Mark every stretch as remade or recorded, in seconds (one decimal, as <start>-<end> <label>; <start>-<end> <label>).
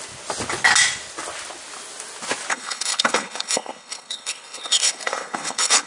0.0-2.5 recorded; 2.5-5.9 remade